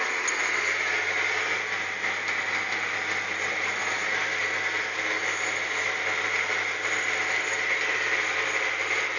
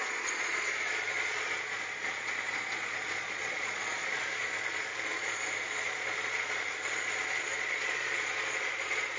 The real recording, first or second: first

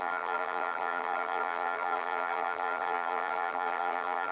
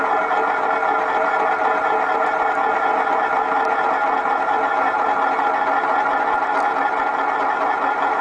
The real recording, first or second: second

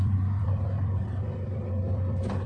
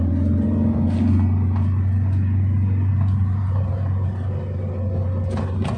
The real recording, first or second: second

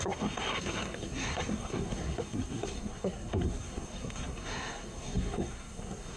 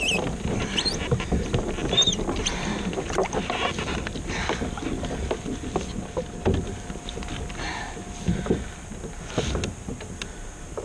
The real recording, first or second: second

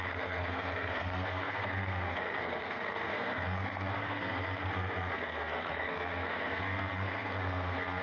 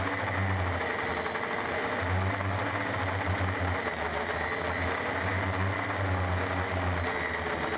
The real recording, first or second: second